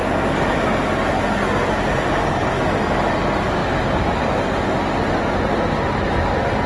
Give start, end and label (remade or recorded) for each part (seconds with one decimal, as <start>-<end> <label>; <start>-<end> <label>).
0.0-3.6 recorded; 3.6-4.7 remade; 4.7-6.7 recorded